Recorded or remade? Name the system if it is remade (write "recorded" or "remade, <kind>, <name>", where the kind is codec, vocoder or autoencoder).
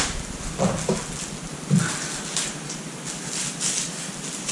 recorded